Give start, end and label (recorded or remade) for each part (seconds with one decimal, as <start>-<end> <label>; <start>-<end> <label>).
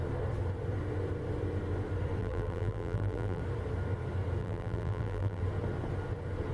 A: 0.0-2.2 recorded; 2.2-3.4 remade; 3.4-4.4 recorded; 4.4-5.4 remade; 5.4-6.5 recorded